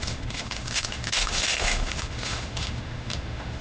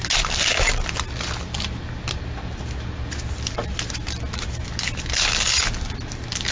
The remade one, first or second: first